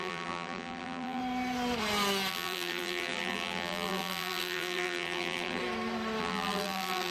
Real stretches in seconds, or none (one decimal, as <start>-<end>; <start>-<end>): 1.2-2.3; 5.6-6.2